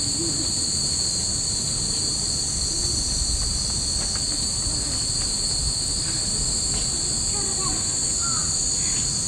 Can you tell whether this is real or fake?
real